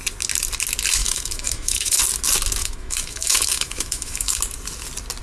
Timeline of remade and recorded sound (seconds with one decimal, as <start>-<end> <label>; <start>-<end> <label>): 0.0-1.0 recorded; 1.0-2.0 remade; 2.0-2.6 recorded; 2.6-4.4 remade; 4.4-5.2 recorded